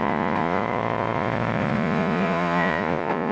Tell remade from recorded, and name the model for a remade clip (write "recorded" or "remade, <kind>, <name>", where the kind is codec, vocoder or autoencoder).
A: remade, vocoder, Vocos